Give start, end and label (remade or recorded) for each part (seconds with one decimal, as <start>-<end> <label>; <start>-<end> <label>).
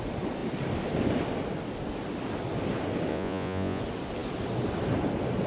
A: 0.0-3.1 recorded; 3.1-3.8 remade; 3.8-5.5 recorded